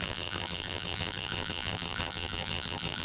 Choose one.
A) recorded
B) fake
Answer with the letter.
B